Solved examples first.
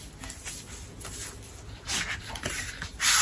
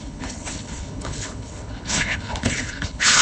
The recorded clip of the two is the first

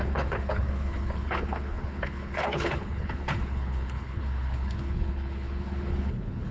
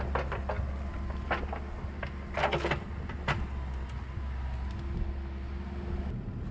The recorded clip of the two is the second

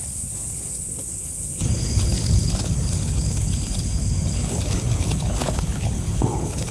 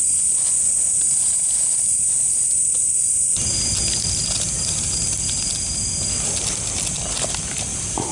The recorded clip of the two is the second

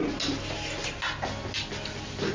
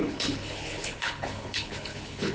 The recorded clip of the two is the first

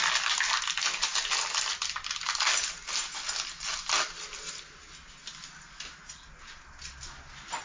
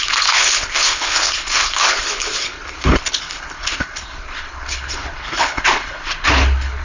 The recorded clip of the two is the first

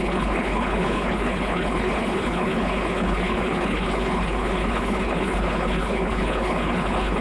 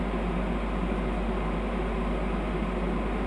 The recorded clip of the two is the second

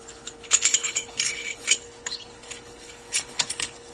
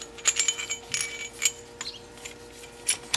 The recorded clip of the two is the second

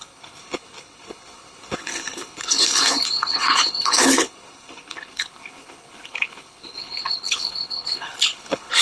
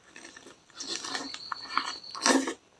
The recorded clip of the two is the second